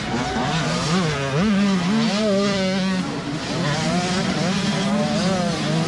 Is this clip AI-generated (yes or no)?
no